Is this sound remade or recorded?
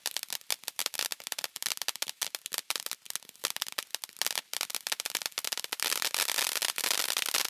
recorded